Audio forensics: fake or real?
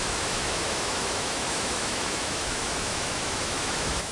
fake